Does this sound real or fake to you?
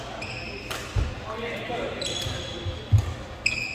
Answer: real